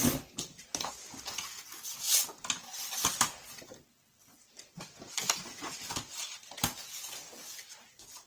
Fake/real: real